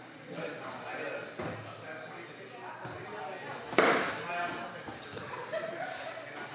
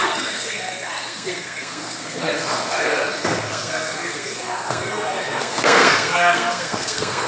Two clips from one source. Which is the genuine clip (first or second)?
first